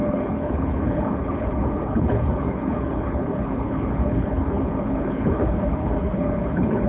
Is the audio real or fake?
fake